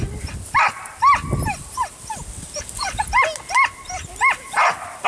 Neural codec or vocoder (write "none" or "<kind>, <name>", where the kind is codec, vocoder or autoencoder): none